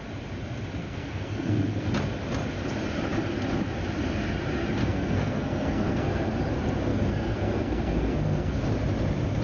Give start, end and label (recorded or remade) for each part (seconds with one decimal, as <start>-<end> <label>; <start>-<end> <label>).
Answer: 0.0-0.8 recorded; 0.8-1.9 remade; 1.9-4.8 recorded; 4.8-6.3 remade; 6.3-6.9 recorded; 6.9-8.6 remade; 8.6-9.4 recorded